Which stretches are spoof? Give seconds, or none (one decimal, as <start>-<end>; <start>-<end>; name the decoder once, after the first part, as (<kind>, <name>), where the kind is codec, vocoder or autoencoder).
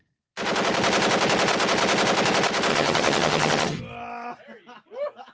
2.7-3.8 (vocoder, HiFi-GAN)